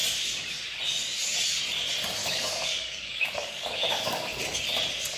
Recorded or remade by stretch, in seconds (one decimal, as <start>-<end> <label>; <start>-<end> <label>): 0.0-2.2 recorded; 2.2-4.4 remade; 4.4-5.2 recorded